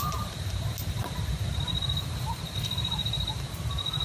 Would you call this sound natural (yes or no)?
yes